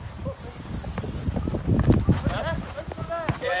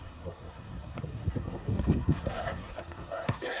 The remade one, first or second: second